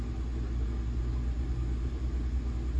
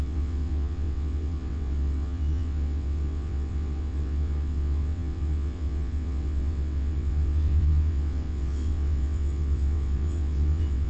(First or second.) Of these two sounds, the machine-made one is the second